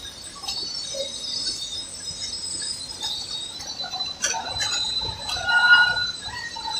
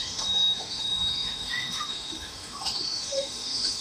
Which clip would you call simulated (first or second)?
second